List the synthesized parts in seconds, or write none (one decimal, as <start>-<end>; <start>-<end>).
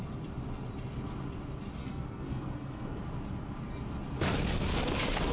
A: 1.8-3.0